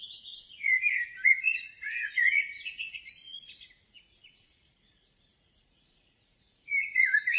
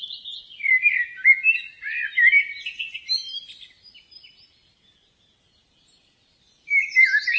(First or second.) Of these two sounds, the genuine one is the second